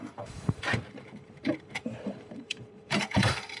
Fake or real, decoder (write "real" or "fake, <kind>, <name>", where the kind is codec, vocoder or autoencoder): fake, vocoder, BigVGAN v2